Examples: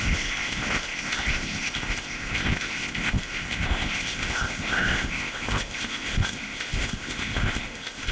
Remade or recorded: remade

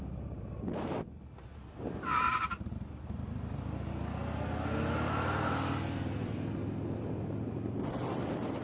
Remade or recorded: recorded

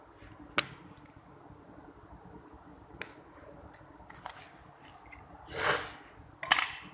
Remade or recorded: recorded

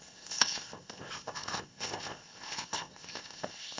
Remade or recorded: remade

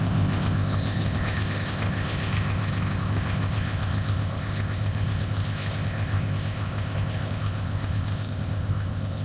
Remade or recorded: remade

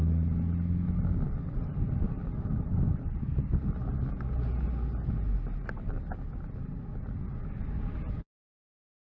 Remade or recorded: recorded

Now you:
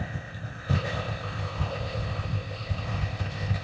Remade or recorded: remade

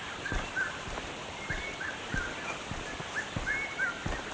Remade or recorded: recorded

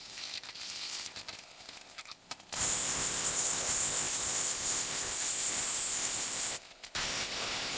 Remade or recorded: remade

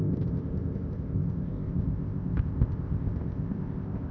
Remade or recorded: remade